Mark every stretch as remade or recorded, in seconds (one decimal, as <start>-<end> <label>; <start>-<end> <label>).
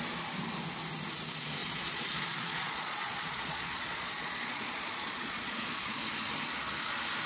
0.0-1.6 recorded; 1.6-6.0 remade; 6.0-7.3 recorded